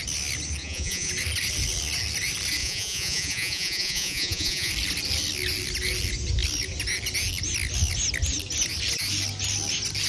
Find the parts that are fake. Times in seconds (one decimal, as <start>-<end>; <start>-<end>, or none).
0.6-1.1; 2.6-4.7

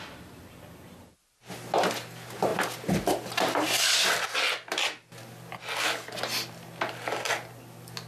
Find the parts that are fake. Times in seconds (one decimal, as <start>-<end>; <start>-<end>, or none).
none

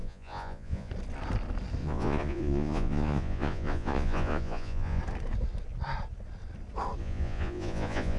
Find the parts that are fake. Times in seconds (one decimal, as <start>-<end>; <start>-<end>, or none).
0.0-0.9; 1.8-5.0; 7.0-8.2